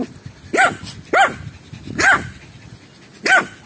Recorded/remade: recorded